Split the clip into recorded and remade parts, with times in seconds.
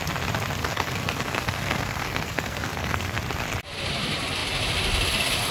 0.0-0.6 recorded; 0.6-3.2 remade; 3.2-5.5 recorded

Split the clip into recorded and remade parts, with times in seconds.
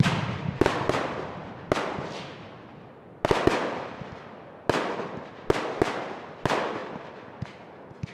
0.0-1.4 remade; 1.4-6.3 recorded; 6.3-6.8 remade; 6.8-8.1 recorded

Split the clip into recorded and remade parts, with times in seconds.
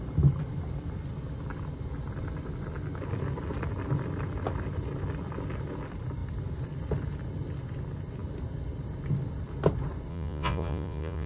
0.0-10.1 recorded; 10.1-11.3 remade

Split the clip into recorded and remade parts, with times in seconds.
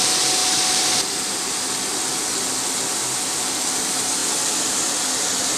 0.0-0.4 recorded; 0.4-1.7 remade; 1.7-5.6 recorded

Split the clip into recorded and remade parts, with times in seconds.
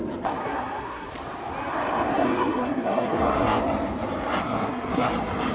0.0-0.4 recorded; 0.4-1.1 remade; 1.1-2.1 recorded; 2.1-3.6 remade; 3.6-4.4 recorded; 4.4-5.1 remade; 5.1-5.5 recorded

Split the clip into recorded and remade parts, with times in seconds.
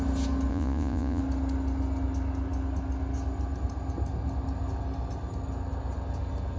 0.0-0.5 recorded; 0.5-1.2 remade; 1.2-6.6 recorded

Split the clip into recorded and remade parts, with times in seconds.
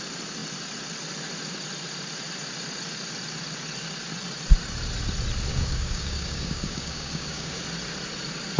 0.0-5.5 recorded; 5.5-7.6 remade; 7.6-8.6 recorded